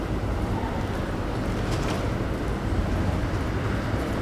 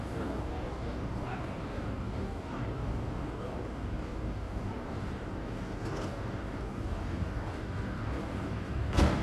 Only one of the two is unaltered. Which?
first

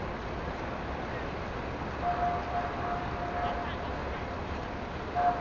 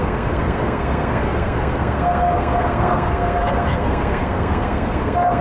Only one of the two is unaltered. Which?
first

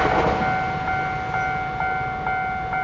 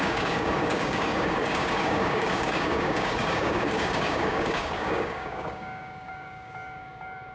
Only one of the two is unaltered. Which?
first